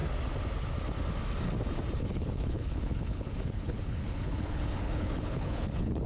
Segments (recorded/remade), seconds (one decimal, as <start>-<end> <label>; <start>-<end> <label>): 0.0-2.0 recorded; 2.0-6.1 remade